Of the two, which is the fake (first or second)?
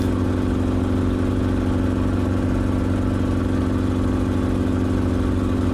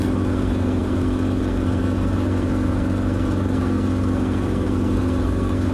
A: second